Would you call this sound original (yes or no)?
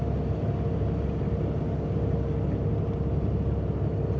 yes